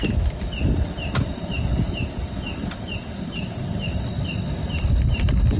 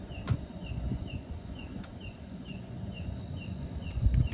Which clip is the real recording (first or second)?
first